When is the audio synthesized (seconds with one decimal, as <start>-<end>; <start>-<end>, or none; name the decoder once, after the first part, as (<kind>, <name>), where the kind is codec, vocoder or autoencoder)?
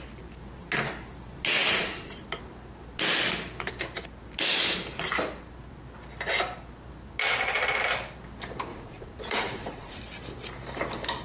1.6-2.2 (vocoder, Vocos); 8.7-10.0